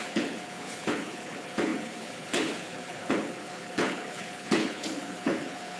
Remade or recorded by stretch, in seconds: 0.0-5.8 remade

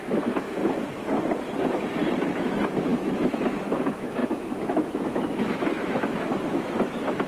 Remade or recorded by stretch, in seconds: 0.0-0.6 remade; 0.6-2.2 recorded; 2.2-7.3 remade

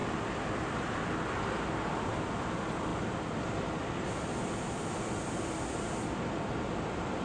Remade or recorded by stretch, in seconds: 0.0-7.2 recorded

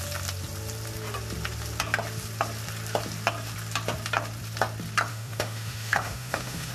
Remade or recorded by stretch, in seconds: 0.0-5.1 recorded; 5.1-6.7 remade